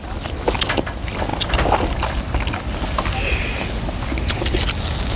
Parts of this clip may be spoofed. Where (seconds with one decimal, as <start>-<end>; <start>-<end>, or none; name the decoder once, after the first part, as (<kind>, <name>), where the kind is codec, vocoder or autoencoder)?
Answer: none